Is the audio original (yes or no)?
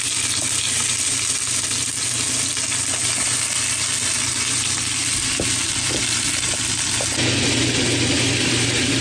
yes